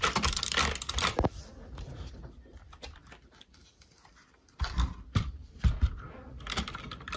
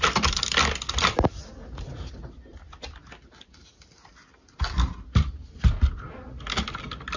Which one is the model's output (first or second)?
first